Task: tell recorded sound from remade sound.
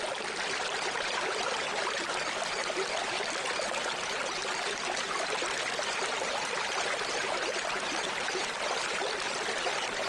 remade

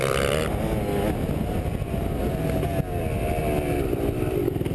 recorded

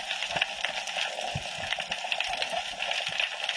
recorded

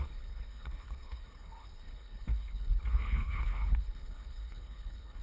remade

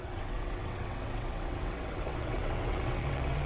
remade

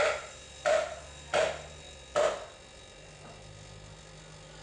recorded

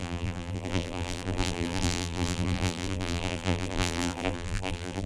remade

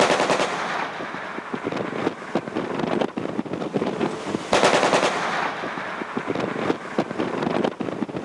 recorded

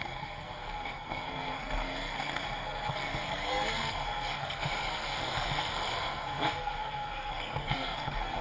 remade